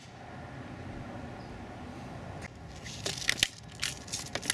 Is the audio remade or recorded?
recorded